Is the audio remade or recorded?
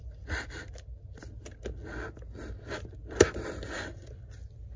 recorded